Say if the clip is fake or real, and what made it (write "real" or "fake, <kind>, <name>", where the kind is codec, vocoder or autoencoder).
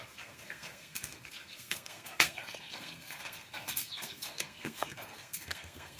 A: fake, codec, SNAC